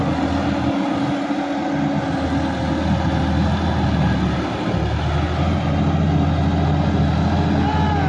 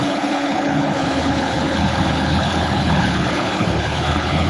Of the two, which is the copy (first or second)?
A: second